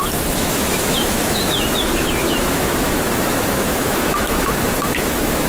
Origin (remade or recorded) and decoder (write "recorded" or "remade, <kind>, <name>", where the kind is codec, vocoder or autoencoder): remade, autoencoder, DAC-VAE